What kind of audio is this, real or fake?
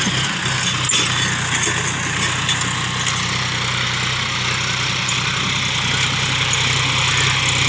real